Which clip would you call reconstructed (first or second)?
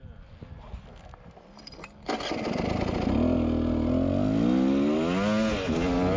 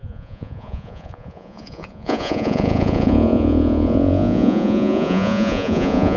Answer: second